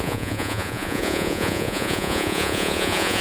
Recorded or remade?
remade